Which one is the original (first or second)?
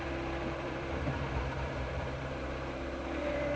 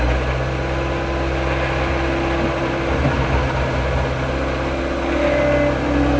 second